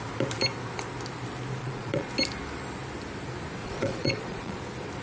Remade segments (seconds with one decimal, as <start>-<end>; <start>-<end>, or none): 1.6-2.1; 3.6-4.6